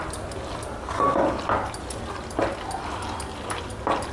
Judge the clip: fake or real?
real